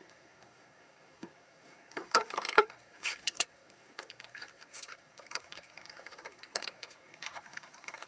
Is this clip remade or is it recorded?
remade